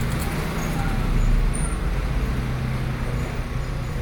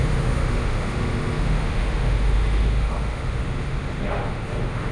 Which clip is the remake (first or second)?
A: second